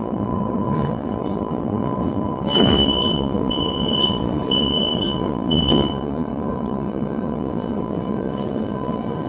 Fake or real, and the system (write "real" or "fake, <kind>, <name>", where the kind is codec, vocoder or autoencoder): fake, vocoder, WaveNeXt